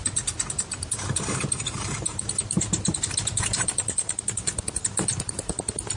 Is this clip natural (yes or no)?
no